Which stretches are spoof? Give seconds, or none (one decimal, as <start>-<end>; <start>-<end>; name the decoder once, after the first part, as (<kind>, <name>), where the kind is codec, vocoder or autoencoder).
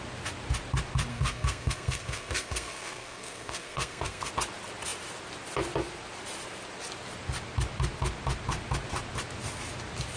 1.1-4.3 (codec, SNAC)